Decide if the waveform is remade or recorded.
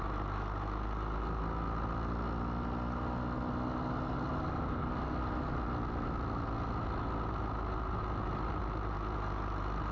recorded